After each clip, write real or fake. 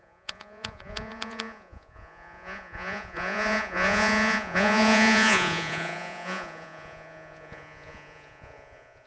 fake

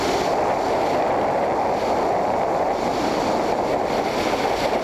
real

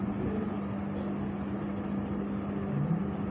real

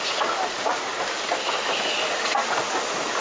real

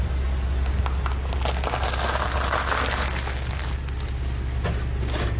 real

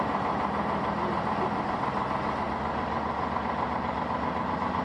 real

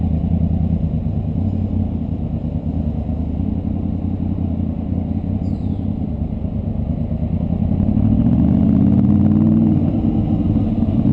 real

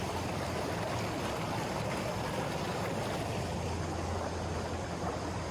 real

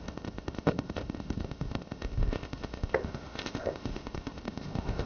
fake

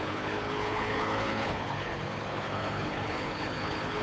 fake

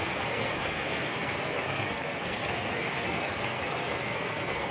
fake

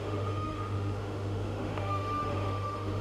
fake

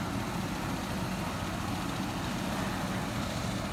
real